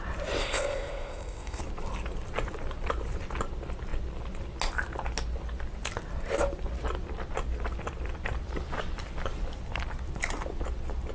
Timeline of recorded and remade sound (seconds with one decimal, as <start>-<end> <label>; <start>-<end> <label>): 0.0-0.4 recorded; 0.4-1.6 remade; 1.6-11.1 recorded